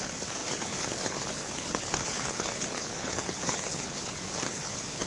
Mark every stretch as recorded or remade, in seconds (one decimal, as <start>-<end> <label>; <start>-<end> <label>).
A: 0.0-5.1 remade